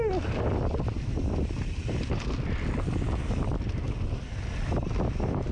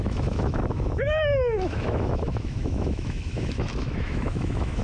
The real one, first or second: first